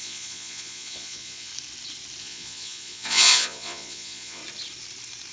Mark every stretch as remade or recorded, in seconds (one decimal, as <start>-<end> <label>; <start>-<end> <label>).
0.0-1.5 remade; 1.5-2.2 recorded; 2.2-4.4 remade; 4.4-5.3 recorded